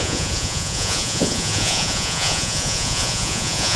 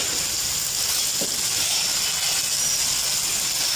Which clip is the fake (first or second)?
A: first